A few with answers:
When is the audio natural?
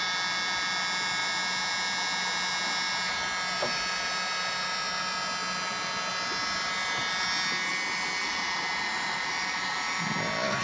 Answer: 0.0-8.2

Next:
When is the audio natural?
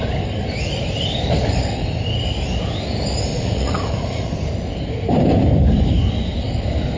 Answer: 0.0-3.3; 4.3-7.0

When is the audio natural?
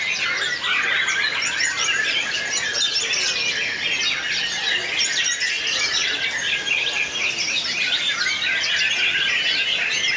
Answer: 0.0-10.2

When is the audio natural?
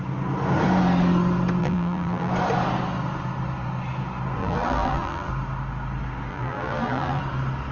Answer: 0.0-1.6; 2.3-4.4; 5.3-6.3; 7.2-7.7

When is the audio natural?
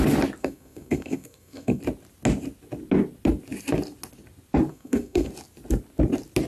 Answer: 0.0-0.4; 1.8-4.7; 5.3-6.5